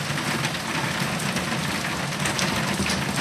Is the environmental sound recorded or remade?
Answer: recorded